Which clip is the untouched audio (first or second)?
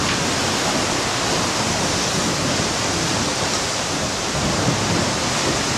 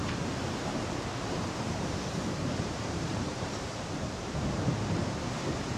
first